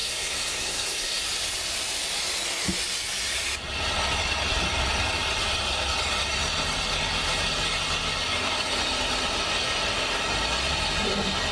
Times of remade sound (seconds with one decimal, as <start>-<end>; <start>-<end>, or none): 0.0-1.2